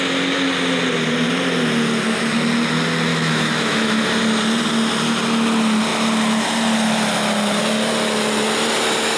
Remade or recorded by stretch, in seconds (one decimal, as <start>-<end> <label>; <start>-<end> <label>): 0.0-3.1 recorded; 3.1-4.0 remade; 4.0-9.2 recorded